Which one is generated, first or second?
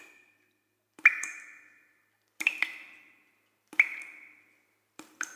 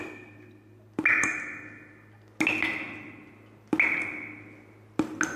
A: first